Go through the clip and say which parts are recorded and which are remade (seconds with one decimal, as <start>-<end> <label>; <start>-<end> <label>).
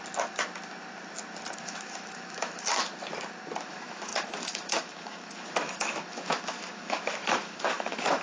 0.0-1.6 recorded; 1.6-2.9 remade; 2.9-3.6 recorded; 3.6-8.2 remade